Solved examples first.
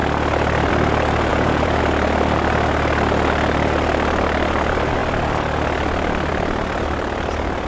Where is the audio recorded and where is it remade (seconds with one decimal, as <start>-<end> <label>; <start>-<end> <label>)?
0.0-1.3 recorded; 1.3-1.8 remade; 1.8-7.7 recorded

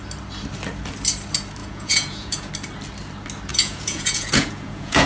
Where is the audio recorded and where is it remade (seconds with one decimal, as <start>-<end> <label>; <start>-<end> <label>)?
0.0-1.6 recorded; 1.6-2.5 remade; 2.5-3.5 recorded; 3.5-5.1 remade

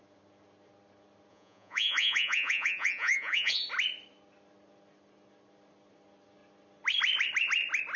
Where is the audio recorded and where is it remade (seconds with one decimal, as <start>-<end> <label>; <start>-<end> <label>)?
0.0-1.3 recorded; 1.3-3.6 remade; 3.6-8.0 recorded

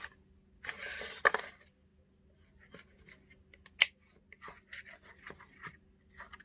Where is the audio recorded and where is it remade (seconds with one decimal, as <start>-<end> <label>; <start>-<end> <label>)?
0.0-6.4 recorded